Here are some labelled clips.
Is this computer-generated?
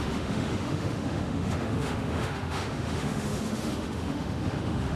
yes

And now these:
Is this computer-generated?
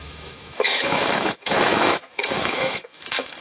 yes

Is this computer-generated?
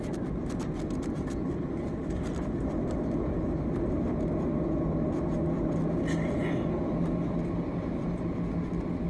no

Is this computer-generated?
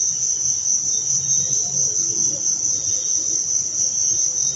no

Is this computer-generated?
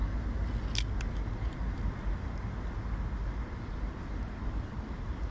no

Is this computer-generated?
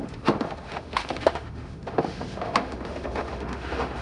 yes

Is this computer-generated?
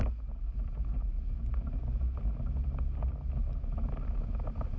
no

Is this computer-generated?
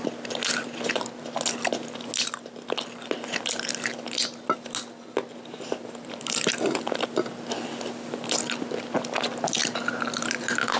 no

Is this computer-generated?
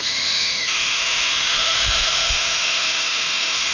yes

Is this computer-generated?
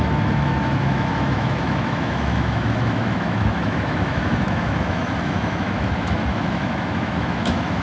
yes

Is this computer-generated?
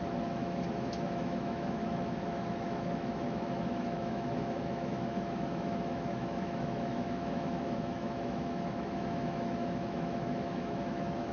yes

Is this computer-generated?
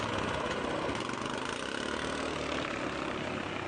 no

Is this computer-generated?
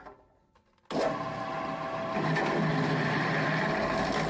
no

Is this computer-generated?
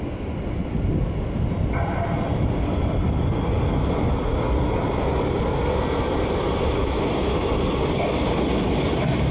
no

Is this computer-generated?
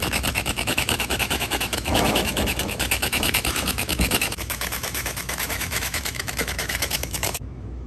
yes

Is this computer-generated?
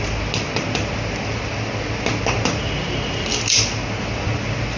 no